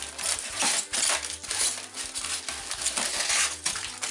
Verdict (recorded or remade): recorded